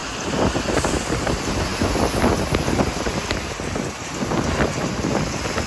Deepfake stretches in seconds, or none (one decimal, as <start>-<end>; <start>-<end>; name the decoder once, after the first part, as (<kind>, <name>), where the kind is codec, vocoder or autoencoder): none